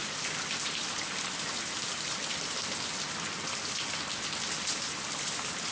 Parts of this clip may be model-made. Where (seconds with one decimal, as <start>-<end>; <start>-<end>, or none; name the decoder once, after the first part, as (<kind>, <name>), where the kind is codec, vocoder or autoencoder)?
none